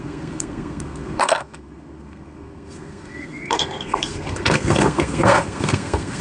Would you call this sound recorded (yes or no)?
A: no